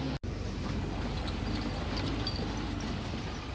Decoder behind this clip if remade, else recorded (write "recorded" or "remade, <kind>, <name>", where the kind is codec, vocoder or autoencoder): recorded